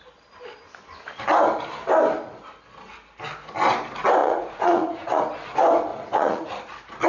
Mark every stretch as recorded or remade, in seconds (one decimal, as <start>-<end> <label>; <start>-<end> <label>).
0.0-4.2 recorded; 4.2-5.2 remade; 5.2-5.9 recorded; 5.9-6.5 remade; 6.5-7.1 recorded